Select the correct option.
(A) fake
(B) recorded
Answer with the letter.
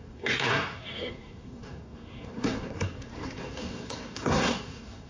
A